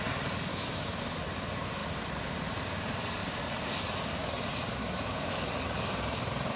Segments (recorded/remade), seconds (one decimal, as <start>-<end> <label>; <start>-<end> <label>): 0.0-0.5 recorded; 0.5-1.0 remade; 1.0-4.8 recorded; 4.8-5.5 remade; 5.5-6.6 recorded